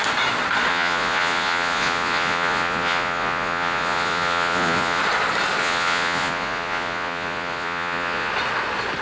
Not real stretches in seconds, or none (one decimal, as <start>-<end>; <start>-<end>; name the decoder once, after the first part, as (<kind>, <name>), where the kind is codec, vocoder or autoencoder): 0.7-5.0 (vocoder, Vocos); 5.6-8.3